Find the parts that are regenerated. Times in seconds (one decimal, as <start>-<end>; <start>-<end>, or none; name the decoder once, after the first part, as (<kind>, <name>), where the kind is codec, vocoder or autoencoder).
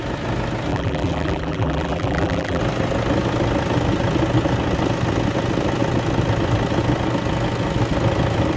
0.7-2.6 (vocoder, BigVGAN v2)